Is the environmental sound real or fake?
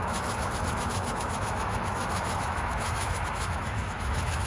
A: fake